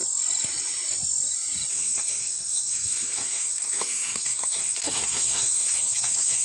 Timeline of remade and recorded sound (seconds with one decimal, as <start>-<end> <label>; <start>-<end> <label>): 0.0-1.7 recorded; 1.7-6.4 remade